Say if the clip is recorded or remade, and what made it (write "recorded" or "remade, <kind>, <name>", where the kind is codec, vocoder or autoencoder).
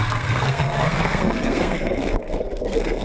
remade, codec, SNAC